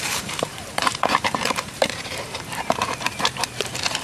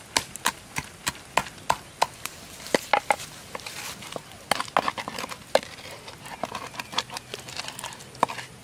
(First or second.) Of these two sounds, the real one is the second